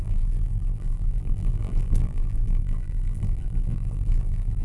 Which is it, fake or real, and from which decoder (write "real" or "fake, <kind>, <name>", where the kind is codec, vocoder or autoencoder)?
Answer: fake, vocoder, BigVGAN v2